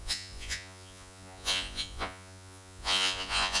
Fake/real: fake